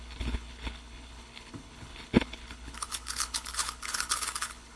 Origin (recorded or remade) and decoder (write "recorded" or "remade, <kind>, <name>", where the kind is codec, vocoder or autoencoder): remade, codec, HILCodec